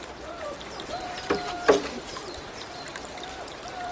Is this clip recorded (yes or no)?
no